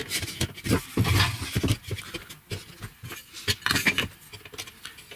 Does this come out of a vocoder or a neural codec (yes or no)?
no